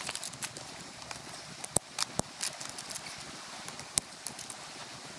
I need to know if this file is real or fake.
real